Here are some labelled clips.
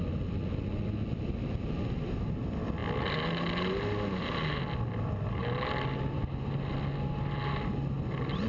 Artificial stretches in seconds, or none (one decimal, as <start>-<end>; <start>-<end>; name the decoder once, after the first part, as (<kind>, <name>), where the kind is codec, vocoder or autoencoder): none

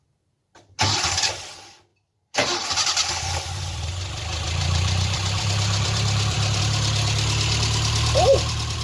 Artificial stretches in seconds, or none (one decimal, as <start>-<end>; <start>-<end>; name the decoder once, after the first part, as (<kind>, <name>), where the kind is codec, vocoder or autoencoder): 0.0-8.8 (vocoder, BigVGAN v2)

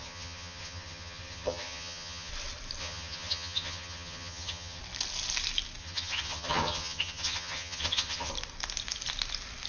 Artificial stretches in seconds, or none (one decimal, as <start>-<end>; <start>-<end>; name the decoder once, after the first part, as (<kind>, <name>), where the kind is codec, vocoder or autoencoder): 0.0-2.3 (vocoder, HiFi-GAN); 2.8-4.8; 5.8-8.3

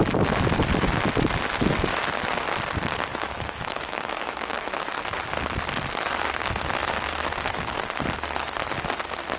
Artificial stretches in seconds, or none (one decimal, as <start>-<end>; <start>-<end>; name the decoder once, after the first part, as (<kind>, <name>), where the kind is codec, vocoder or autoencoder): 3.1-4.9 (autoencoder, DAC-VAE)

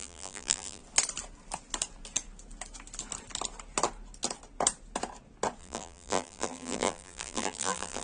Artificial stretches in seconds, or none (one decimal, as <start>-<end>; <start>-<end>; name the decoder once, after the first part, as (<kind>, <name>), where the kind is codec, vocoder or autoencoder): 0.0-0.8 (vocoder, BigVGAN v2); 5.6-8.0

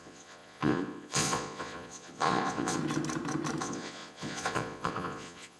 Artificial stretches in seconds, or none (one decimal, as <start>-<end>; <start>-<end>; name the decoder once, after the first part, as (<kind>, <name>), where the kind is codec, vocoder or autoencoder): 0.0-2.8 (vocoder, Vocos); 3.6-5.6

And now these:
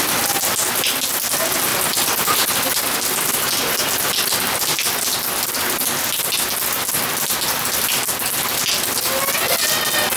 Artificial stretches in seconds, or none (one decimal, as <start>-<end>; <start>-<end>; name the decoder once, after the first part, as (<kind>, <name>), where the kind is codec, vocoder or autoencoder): none

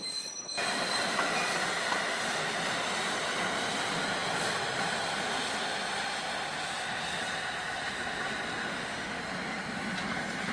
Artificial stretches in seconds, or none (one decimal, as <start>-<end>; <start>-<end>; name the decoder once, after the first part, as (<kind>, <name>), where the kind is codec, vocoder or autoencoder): 8.7-9.2 (autoencoder, DAC-VAE)